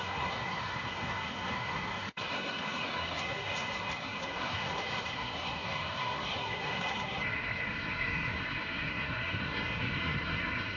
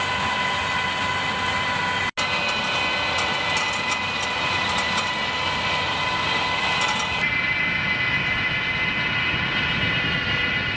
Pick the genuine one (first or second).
second